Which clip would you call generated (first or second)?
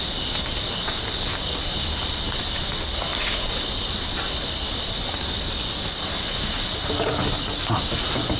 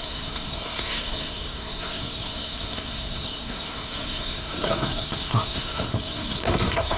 second